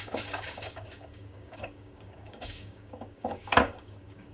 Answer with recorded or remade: remade